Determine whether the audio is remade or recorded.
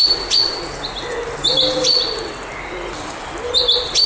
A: recorded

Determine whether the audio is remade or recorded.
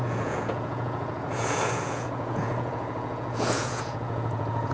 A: remade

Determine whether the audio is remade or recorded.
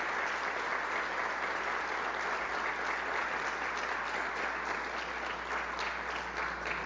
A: recorded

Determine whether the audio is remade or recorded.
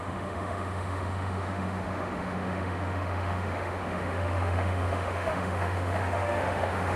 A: remade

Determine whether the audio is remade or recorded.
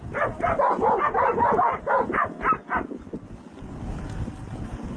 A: recorded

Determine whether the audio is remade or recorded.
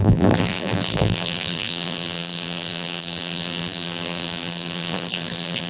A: remade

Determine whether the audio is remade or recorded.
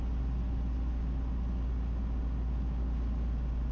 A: recorded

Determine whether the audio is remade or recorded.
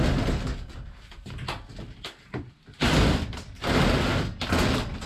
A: recorded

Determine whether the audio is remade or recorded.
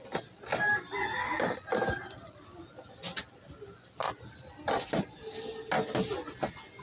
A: recorded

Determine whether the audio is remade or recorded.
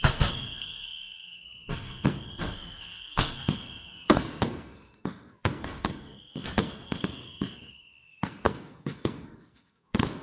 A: remade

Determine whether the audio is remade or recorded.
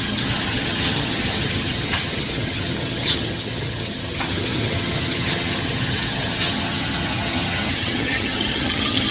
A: remade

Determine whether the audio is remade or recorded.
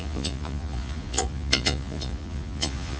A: remade